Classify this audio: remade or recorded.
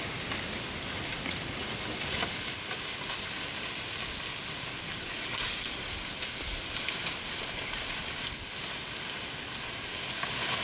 recorded